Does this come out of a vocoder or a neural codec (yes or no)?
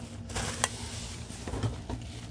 no